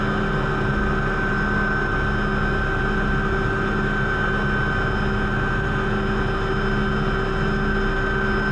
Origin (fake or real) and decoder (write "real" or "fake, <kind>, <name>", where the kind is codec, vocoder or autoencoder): real